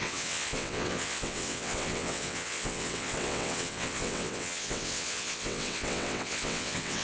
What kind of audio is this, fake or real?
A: fake